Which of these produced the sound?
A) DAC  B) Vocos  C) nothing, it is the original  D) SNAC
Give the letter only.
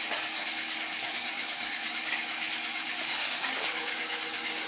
A